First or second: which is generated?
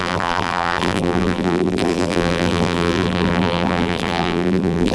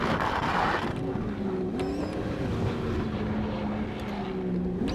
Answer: first